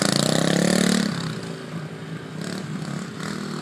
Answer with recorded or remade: recorded